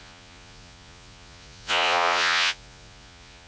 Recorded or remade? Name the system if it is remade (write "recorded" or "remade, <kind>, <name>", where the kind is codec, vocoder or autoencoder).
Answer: remade, vocoder, Vocos